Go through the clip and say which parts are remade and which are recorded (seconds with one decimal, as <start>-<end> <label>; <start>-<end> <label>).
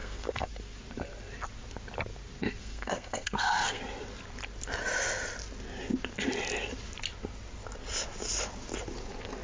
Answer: 0.0-0.5 remade; 0.5-2.6 recorded; 2.6-3.8 remade; 3.8-9.4 recorded